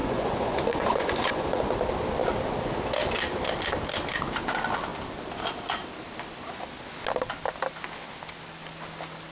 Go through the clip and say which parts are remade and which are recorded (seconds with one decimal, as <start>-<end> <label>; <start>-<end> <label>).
0.0-1.6 remade; 1.6-9.3 recorded